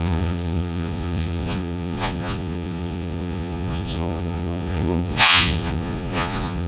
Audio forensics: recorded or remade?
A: remade